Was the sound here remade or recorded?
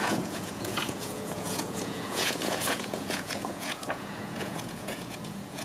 remade